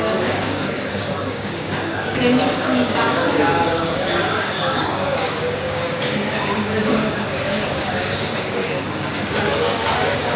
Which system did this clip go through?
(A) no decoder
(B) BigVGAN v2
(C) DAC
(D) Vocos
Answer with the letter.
C